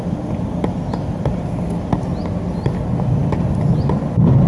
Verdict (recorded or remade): recorded